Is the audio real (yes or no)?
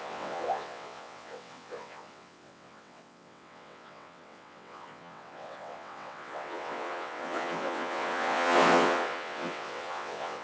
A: no